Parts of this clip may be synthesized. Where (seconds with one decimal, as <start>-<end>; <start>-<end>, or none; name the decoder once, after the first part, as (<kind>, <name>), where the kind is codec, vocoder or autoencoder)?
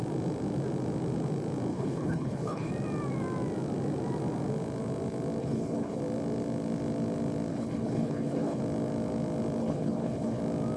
1.7-2.7 (codec, HILCodec); 5.4-6.0; 7.5-8.6; 9.6-10.4